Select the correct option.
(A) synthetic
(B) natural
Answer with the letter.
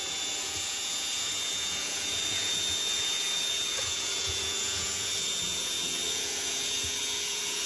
A